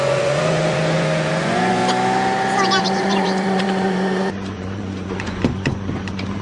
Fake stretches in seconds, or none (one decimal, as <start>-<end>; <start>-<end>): 0.0-1.8; 2.8-6.4